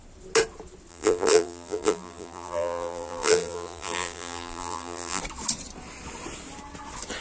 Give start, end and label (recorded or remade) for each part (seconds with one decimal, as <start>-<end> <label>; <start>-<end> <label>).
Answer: 0.0-0.9 recorded; 0.9-5.2 remade; 5.2-7.2 recorded